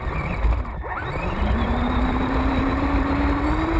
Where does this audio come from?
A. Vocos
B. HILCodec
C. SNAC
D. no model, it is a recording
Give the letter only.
D